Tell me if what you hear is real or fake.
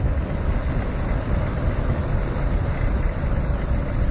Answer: real